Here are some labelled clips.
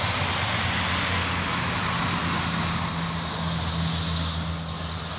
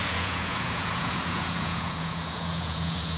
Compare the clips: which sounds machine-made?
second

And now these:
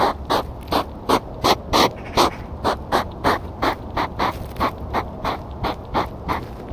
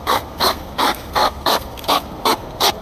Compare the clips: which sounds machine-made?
second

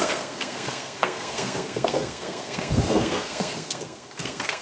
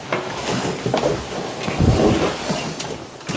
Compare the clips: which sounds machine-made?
first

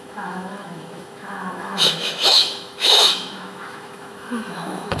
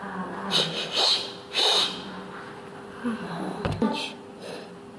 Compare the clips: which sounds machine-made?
first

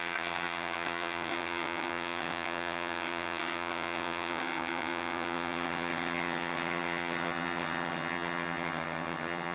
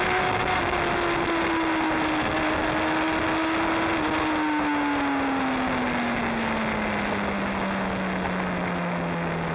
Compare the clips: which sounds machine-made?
first